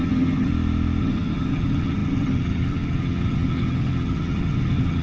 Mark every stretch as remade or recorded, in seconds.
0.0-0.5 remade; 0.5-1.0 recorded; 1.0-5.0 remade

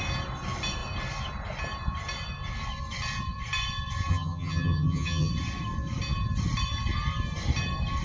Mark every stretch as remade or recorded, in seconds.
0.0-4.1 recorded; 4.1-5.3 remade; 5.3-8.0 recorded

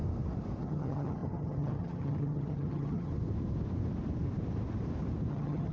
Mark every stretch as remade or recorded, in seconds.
0.0-0.6 recorded; 0.6-3.1 remade; 3.1-5.3 recorded; 5.3-5.7 remade